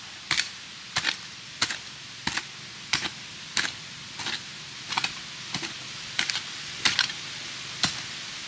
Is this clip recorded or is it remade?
recorded